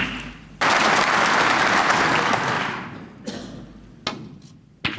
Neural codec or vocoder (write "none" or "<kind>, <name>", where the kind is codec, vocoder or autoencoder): none